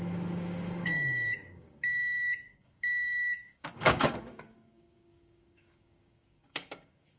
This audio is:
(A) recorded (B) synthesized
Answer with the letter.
B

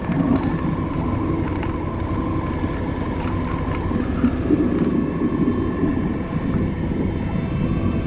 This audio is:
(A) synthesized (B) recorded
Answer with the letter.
B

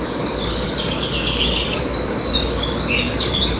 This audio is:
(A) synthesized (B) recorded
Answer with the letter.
A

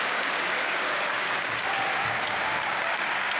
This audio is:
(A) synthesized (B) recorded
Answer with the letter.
A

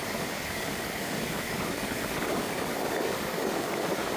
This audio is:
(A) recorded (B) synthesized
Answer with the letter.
B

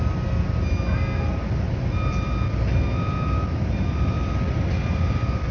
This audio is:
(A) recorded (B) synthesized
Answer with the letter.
A